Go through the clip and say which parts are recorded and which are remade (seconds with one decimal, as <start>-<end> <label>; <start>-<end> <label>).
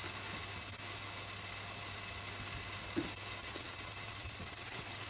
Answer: 0.0-3.4 recorded; 3.4-5.1 remade